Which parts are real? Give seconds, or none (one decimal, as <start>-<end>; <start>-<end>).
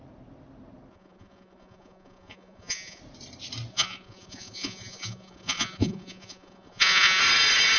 0.0-0.9; 3.0-3.7; 7.2-7.8